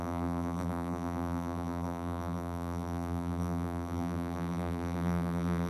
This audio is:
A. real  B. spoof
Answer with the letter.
B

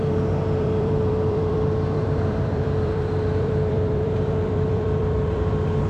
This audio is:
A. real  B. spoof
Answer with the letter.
B